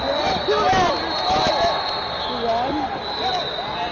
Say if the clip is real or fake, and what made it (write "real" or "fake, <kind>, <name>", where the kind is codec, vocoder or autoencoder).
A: real